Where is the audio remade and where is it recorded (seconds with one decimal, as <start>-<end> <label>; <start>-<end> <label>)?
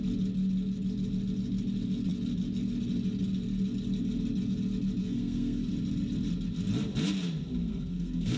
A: 0.0-5.0 recorded; 5.0-5.7 remade; 5.7-7.6 recorded; 7.6-8.4 remade